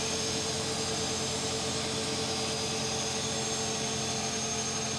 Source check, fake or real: real